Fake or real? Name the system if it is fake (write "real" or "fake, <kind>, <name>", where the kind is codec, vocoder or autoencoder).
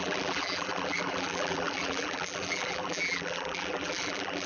fake, vocoder, BigVGAN v2